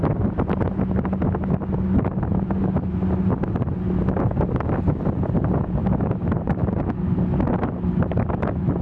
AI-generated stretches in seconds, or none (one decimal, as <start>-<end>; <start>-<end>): 5.8-6.8